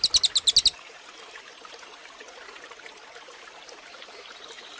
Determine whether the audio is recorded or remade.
recorded